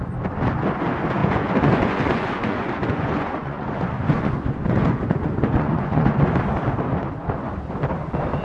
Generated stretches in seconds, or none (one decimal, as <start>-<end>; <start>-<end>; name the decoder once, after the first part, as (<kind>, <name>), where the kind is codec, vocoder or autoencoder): 1.2-6.2 (vocoder, Vocos)